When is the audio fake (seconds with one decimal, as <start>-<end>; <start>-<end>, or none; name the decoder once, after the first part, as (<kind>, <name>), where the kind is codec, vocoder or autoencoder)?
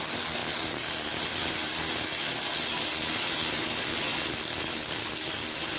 none